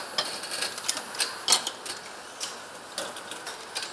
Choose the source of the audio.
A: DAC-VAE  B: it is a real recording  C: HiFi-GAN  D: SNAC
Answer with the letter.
B